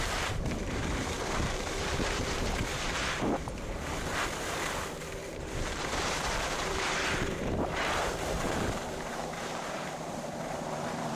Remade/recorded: remade